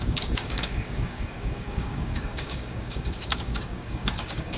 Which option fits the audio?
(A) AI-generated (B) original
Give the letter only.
A